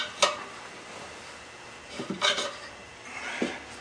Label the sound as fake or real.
real